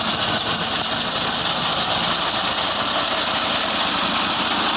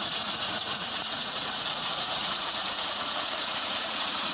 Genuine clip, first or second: first